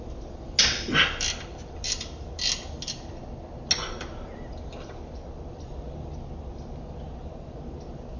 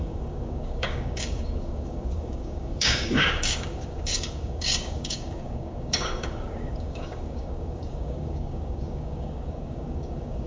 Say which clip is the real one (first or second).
first